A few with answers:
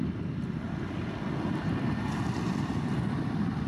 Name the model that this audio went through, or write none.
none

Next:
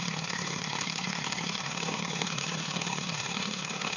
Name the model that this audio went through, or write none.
codec, SNAC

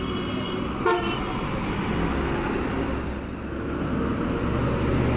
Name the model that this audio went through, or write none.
none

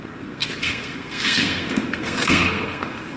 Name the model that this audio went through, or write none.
codec, SNAC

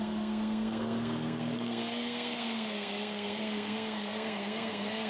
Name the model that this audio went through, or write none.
codec, SNAC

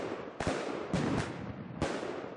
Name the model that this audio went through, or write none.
none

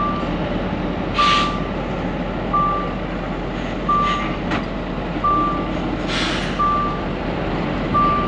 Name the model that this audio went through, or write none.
none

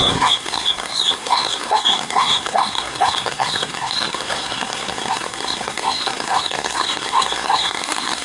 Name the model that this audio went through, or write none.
codec, SNAC